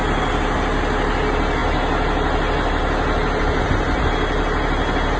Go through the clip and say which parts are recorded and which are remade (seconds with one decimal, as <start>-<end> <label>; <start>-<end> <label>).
0.0-5.2 recorded